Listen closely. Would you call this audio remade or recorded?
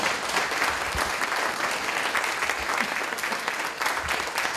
recorded